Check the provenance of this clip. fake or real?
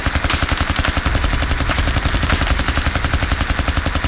real